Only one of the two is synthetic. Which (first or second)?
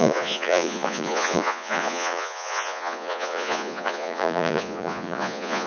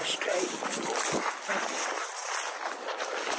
first